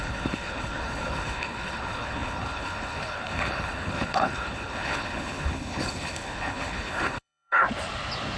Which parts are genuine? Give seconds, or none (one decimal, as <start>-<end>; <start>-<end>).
7.6-8.4